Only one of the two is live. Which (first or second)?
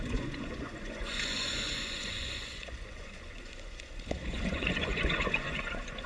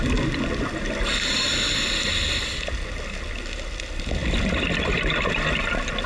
second